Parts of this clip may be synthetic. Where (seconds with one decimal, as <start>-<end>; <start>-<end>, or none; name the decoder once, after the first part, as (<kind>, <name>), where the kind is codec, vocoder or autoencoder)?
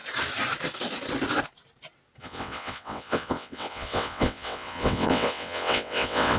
2.2-6.4 (vocoder, WaveNeXt)